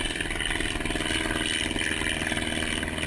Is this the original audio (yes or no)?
yes